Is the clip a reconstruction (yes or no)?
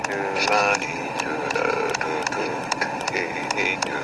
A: no